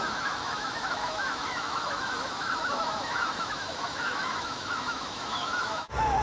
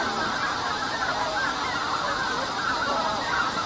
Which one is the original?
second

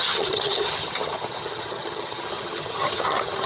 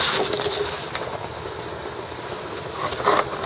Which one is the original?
second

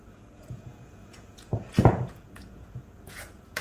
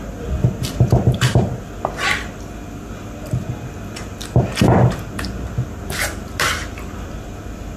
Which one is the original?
second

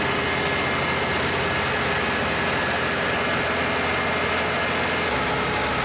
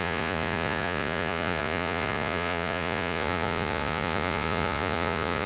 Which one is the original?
first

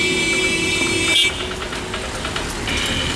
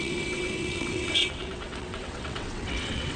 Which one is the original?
first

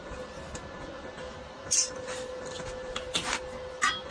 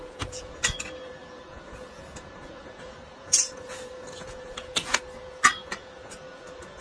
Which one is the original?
first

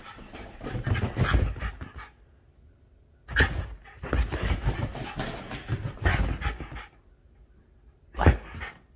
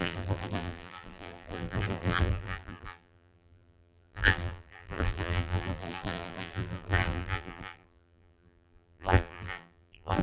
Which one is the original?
first